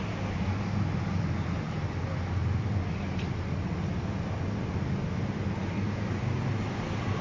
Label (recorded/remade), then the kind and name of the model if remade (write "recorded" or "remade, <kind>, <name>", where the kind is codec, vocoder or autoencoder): recorded